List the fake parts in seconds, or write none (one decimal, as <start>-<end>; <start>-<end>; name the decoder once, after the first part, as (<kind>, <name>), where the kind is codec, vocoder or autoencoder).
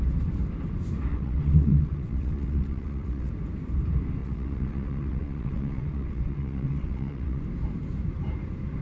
1.1-3.3 (vocoder, WaveNeXt); 4.2-7.4